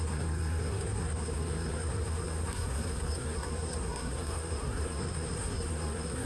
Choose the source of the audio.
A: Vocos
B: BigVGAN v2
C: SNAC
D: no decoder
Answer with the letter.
C